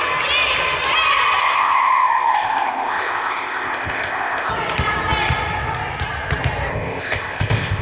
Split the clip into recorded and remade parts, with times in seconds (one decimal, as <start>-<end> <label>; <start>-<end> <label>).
0.0-1.4 recorded; 1.4-4.5 remade; 4.5-6.7 recorded; 6.7-7.8 remade